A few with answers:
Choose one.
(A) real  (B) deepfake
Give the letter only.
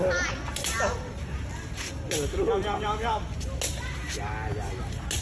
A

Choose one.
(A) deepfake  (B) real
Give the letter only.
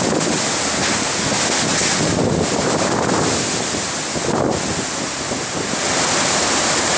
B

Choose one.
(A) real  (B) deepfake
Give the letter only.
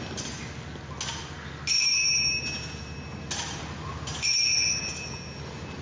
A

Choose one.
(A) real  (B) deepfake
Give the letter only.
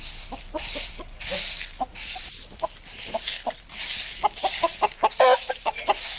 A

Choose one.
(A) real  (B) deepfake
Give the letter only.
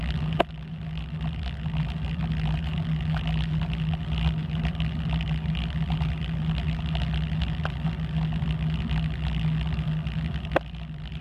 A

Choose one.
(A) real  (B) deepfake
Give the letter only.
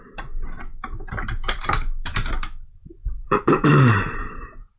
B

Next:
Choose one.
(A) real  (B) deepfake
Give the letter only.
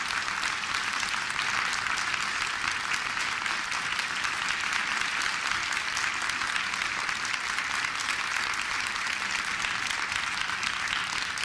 A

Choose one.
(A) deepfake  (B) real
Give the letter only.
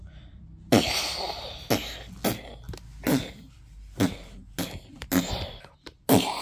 B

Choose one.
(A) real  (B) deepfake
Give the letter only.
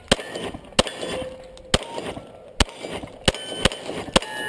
A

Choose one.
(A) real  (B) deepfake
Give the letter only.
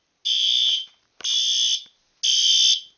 A